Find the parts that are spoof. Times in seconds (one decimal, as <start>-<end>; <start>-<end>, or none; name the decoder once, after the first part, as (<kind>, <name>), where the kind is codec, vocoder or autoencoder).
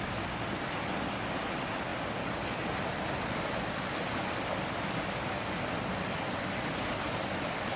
none